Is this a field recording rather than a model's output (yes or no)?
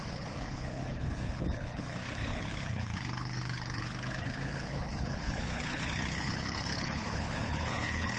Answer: no